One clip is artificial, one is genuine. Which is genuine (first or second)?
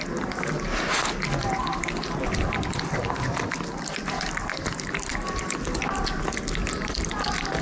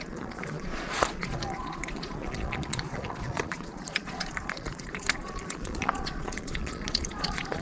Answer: first